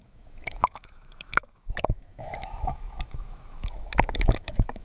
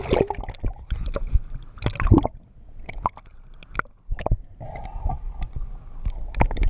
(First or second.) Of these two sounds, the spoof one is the first